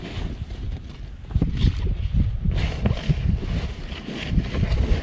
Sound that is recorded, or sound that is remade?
recorded